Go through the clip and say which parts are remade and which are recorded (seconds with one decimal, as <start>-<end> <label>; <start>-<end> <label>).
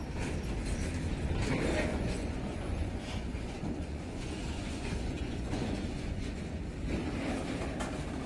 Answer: 0.0-1.9 recorded; 1.9-6.6 remade; 6.6-8.3 recorded